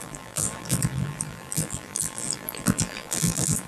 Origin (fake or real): fake